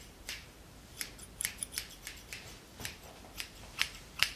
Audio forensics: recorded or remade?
remade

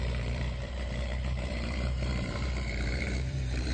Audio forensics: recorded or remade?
remade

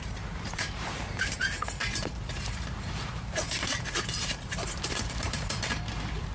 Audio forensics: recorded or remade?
remade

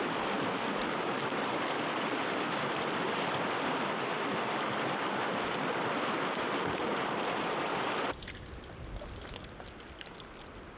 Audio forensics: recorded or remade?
recorded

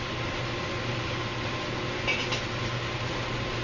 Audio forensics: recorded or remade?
recorded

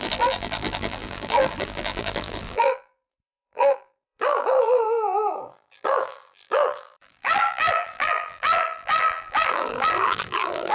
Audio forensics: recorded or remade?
remade